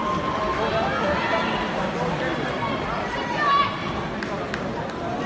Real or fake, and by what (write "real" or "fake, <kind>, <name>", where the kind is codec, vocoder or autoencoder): real